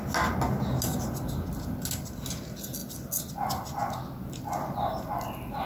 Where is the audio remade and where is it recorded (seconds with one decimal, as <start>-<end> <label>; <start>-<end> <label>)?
0.0-5.7 recorded